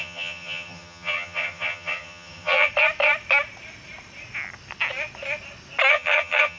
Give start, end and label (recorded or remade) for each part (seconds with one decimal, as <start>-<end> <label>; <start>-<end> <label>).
0.0-2.7 remade; 2.7-5.9 recorded; 5.9-6.6 remade